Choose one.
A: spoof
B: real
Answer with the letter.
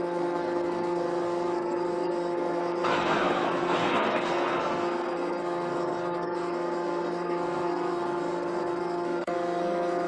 A